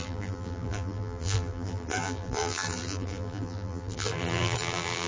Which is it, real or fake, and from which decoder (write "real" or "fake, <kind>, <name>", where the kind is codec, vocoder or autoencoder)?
fake, vocoder, BigVGAN v2